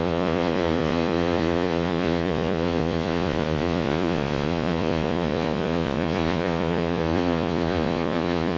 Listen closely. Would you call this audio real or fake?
fake